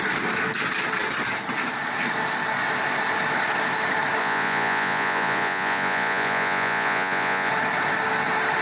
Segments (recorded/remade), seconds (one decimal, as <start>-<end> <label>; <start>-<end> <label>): 0.0-4.2 recorded; 4.2-7.5 remade; 7.5-8.6 recorded